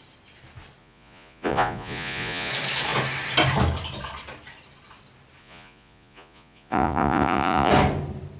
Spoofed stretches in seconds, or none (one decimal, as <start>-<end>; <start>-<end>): 0.8-2.5; 5.4-7.7